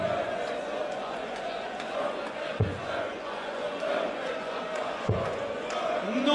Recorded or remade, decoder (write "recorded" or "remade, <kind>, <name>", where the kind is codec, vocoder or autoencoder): remade, vocoder, Vocos